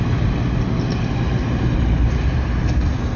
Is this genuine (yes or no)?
yes